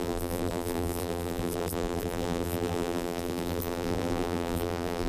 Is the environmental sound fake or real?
fake